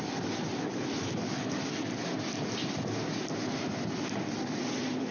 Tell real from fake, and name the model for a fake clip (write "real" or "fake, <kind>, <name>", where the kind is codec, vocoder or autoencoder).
real